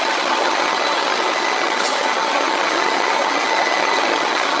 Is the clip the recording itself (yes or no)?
no